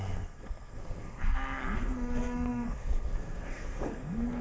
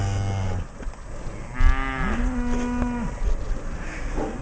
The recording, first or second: second